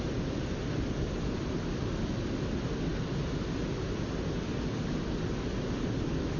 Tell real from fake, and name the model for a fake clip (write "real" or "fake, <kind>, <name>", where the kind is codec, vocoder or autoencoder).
real